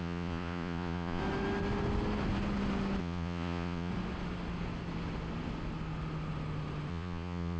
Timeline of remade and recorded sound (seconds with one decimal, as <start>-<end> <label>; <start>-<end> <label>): 0.0-1.2 remade; 1.2-3.0 recorded; 3.0-3.9 remade; 3.9-6.9 recorded; 6.9-7.6 remade